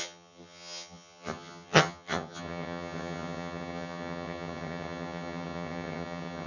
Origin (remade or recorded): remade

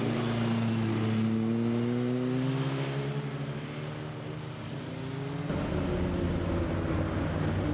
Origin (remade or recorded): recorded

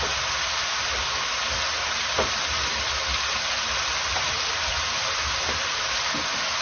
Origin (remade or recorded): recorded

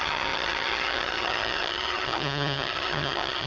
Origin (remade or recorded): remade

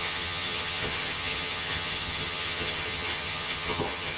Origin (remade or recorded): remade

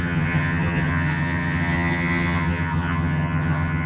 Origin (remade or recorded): remade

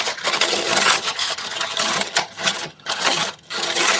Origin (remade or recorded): remade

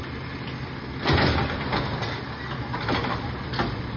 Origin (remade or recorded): recorded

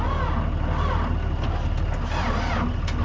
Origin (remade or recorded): recorded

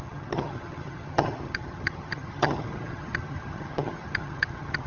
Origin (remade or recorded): remade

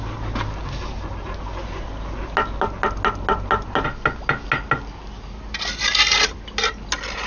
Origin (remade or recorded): recorded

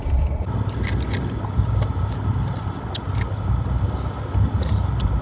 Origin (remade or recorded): recorded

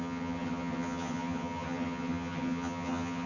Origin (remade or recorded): remade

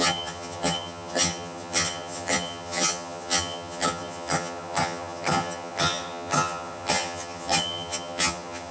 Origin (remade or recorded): remade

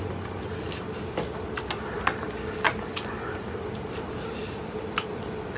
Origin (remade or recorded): recorded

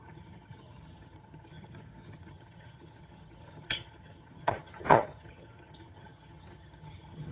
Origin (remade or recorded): remade